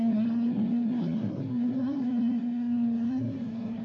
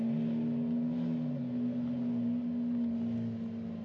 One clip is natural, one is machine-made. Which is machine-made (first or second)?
first